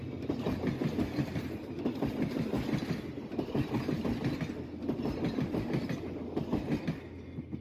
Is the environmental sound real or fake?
real